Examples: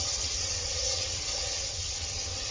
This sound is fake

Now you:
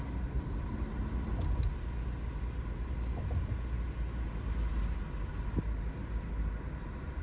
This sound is real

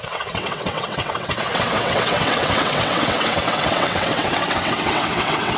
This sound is fake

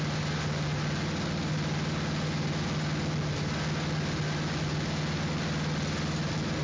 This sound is real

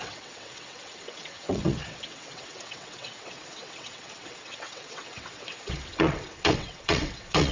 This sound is fake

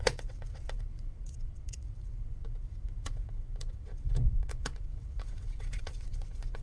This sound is fake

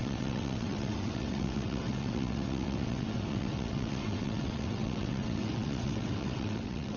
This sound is fake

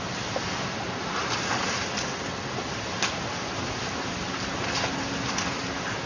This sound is real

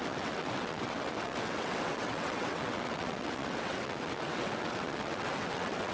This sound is fake